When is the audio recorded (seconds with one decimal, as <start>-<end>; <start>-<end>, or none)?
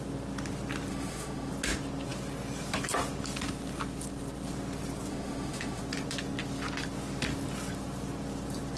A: 0.0-0.9; 1.5-5.1; 5.8-8.8